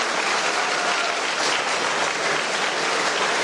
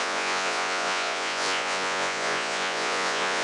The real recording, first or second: first